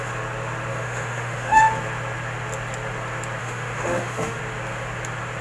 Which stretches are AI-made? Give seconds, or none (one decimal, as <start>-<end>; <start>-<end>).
0.7-1.6; 3.4-4.4